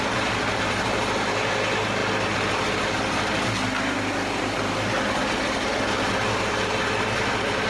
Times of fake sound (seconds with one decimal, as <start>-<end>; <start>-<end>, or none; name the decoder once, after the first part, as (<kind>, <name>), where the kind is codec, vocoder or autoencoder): none